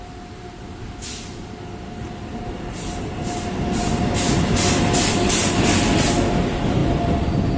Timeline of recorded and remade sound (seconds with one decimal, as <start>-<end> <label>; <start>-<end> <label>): 0.0-7.6 recorded